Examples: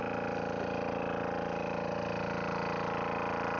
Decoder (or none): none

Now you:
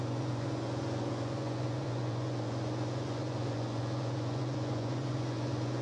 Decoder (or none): vocoder, Vocos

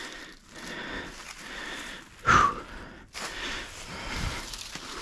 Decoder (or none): none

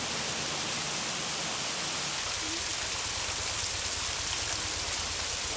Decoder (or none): none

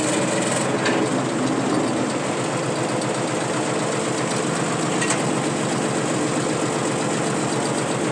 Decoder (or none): none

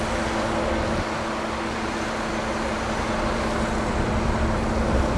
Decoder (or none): none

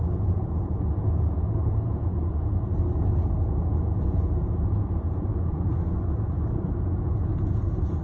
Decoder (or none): vocoder, Vocos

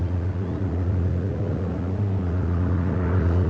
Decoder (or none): vocoder, Vocos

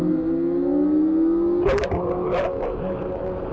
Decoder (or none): none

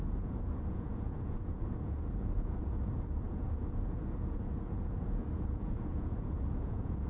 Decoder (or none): vocoder, Vocos